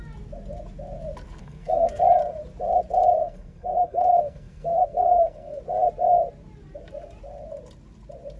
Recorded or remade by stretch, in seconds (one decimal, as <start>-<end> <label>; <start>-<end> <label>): 0.0-1.4 recorded; 1.4-2.0 remade; 2.0-3.2 recorded; 3.2-5.6 remade; 5.6-8.4 recorded